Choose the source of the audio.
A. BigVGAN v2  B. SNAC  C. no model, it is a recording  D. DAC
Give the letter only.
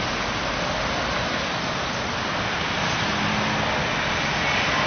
C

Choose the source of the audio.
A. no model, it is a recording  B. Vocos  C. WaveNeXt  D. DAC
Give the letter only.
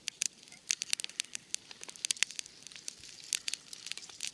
A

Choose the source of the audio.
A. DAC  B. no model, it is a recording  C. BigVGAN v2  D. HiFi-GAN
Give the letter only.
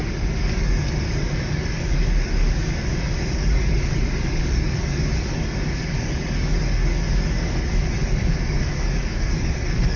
A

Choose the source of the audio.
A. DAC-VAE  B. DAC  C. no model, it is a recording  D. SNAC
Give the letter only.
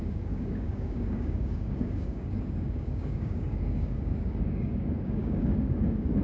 B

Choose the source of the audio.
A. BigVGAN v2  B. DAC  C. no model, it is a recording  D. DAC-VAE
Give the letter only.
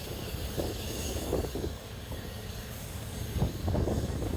B